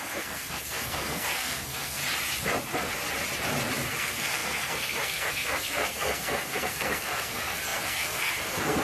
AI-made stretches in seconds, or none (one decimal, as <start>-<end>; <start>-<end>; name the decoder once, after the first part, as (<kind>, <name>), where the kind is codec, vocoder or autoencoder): 0.0-2.0 (codec, SNAC); 3.9-8.8